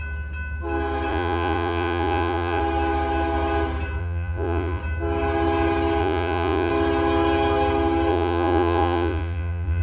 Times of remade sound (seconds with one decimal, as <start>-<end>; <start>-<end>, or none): 1.1-2.6; 4.0-4.8; 6.0-6.7; 8.1-9.8

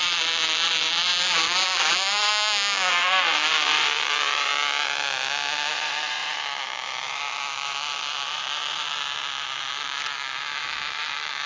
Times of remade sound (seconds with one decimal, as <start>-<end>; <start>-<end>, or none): 0.0-2.3; 2.9-4.5; 5.7-11.5

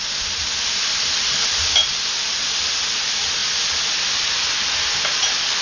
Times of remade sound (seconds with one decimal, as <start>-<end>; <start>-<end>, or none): none

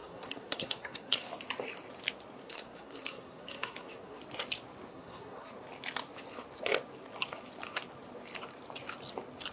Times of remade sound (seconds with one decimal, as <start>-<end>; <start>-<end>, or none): 0.0-1.3; 2.4-4.2; 4.9-5.5

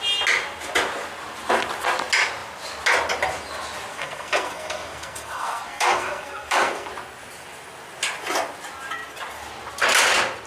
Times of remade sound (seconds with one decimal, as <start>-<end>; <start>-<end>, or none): 3.9-6.9